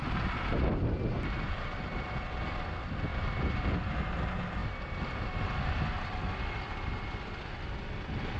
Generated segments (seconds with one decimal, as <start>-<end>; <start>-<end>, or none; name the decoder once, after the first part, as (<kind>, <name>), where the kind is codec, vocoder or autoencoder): 3.1-4.1 (vocoder, BigVGAN v2)